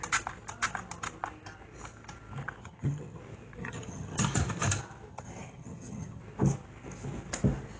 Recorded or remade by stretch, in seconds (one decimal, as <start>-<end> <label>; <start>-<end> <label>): 0.0-2.6 recorded; 2.6-3.2 remade; 3.2-3.6 recorded; 3.6-4.2 remade; 4.2-5.1 recorded; 5.1-6.2 remade; 6.2-7.8 recorded